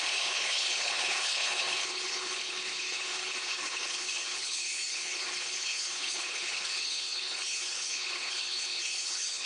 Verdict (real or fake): fake